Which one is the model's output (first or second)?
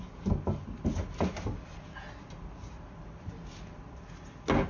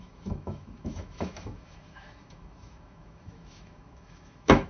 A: second